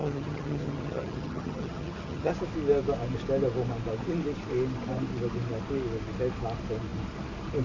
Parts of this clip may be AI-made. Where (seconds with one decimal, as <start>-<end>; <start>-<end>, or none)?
0.0-2.3